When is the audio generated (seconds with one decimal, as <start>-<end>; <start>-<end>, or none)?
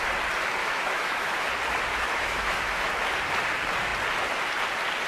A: 0.6-1.5; 1.9-2.9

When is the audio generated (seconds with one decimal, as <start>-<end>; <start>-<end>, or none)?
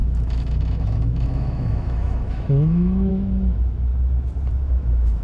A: 0.0-3.9; 4.5-5.2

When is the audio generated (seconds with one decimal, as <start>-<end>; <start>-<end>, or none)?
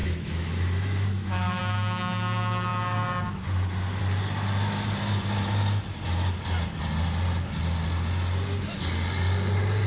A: 0.0-1.6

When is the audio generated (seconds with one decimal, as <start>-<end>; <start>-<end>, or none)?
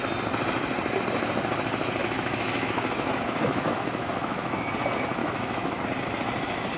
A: 2.0-4.7; 5.2-5.8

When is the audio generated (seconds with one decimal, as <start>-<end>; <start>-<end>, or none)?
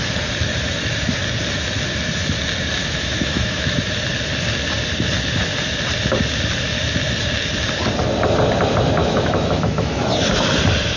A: 2.8-3.8; 9.0-10.0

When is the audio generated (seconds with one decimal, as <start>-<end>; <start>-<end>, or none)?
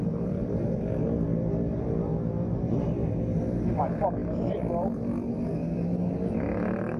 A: none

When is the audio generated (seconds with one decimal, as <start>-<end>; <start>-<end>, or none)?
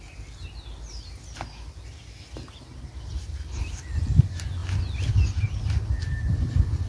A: none